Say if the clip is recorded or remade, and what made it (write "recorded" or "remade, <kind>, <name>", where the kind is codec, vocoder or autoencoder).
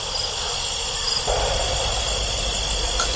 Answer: recorded